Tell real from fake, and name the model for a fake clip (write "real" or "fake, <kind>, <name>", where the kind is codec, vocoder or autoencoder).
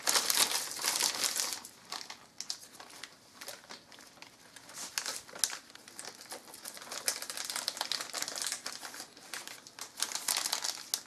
real